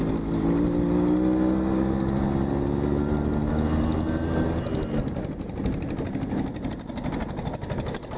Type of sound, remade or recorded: recorded